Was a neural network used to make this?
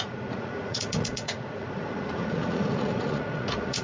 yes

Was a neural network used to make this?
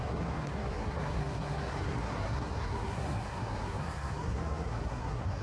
yes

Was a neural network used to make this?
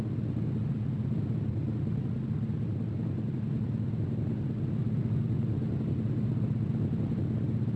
no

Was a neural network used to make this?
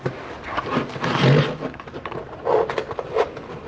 no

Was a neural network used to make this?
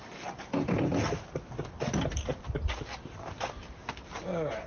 no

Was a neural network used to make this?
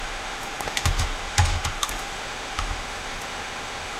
yes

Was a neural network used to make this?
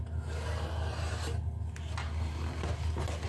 no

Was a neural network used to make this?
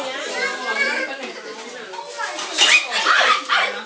no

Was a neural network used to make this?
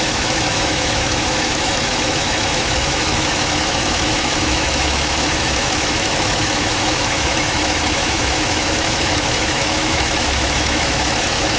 yes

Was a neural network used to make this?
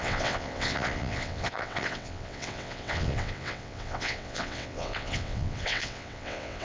yes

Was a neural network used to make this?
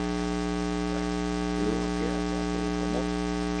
no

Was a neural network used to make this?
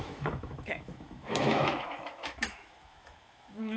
yes